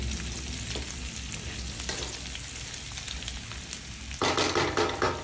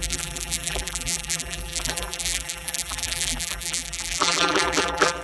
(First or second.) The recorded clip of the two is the first